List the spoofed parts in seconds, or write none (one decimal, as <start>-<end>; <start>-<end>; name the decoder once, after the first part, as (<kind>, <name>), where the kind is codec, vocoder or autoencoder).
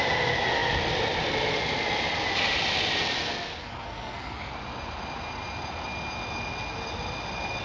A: 3.6-4.5 (codec, SNAC)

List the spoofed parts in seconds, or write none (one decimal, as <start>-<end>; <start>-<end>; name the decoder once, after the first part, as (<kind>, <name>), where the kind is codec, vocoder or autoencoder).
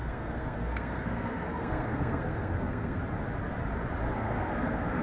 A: 0.0-3.0 (codec, SNAC); 4.1-5.0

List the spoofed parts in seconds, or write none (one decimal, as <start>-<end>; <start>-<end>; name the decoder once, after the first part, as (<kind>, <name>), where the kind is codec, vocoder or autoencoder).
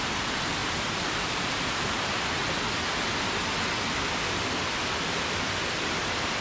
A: 0.0-2.4 (vocoder, BigVGAN v2); 6.0-6.4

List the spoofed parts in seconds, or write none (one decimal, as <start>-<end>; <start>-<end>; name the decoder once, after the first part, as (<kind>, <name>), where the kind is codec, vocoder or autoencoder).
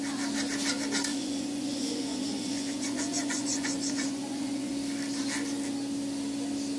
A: 1.1-4.7 (vocoder, Vocos)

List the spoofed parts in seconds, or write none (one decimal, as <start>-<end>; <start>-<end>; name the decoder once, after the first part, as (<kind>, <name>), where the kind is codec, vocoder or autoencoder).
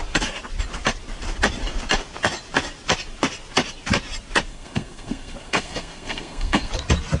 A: 4.5-6.7 (codec, SNAC)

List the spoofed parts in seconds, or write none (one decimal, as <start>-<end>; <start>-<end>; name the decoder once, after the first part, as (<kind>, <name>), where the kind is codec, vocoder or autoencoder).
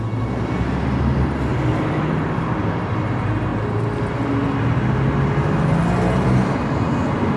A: none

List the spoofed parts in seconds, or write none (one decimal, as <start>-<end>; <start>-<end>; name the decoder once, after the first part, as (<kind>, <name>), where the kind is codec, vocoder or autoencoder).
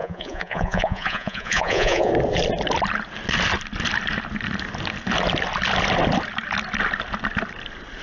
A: 0.0-2.1 (vocoder, Vocos)